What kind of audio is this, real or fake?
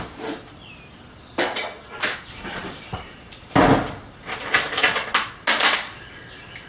real